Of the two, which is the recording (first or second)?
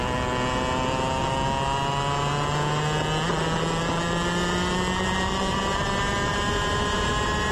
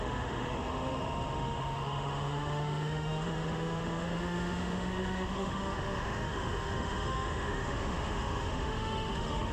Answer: first